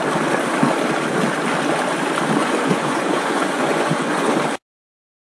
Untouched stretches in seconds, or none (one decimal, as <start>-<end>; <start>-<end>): 0.0-2.4; 4.3-5.2